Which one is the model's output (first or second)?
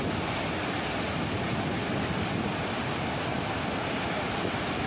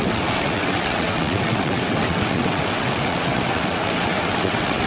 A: second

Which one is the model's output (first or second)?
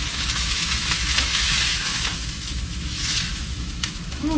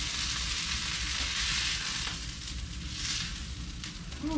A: first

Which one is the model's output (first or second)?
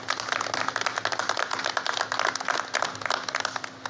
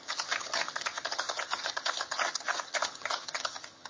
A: second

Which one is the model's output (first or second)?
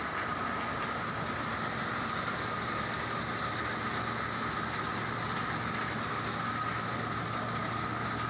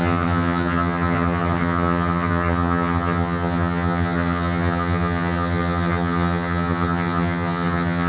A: second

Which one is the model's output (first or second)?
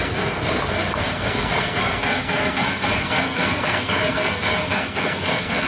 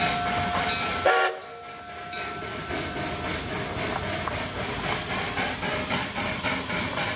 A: first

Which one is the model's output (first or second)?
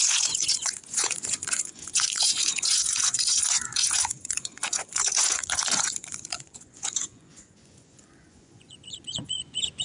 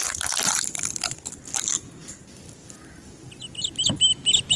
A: first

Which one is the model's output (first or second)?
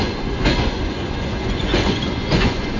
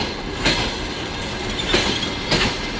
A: first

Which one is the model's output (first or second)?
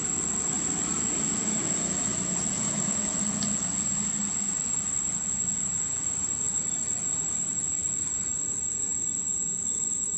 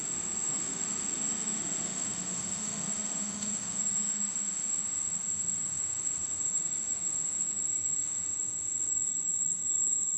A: second